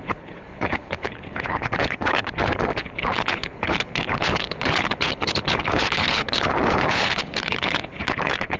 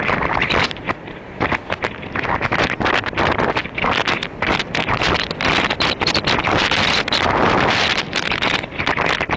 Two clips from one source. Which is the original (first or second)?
second